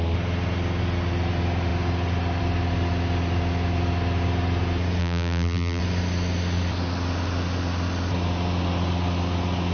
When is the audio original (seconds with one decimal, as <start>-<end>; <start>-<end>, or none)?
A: 0.0-5.0; 5.8-9.7